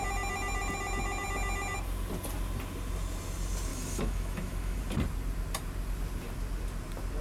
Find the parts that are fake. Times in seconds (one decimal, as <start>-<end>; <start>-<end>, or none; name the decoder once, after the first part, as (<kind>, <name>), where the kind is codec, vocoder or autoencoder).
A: 3.7-4.8 (autoencoder, DAC-VAE)